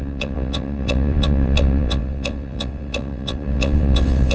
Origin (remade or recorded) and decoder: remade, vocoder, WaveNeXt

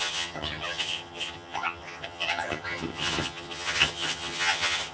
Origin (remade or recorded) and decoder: remade, vocoder, HiFi-GAN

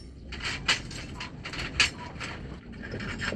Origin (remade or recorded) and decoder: recorded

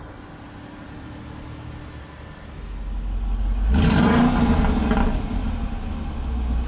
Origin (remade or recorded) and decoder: recorded